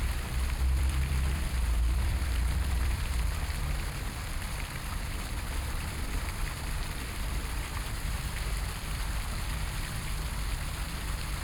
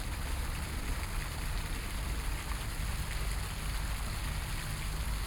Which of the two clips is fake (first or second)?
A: first